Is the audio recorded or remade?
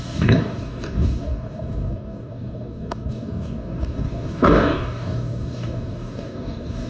remade